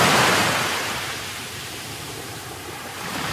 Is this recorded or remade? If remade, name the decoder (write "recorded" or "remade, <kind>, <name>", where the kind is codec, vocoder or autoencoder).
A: remade, vocoder, BigVGAN v2